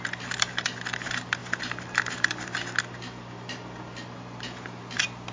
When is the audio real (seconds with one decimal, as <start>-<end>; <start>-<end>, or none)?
0.0-5.3